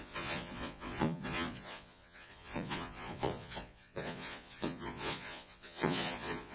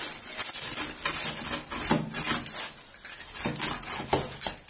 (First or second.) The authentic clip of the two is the second